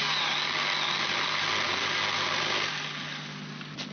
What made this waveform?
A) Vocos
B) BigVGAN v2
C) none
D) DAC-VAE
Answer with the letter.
C